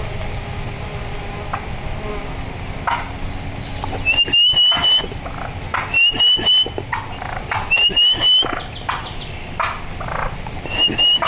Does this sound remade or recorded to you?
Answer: recorded